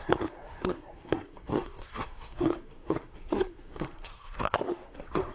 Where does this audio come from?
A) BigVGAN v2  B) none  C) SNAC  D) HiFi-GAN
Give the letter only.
C